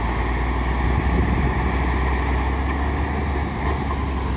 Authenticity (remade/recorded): recorded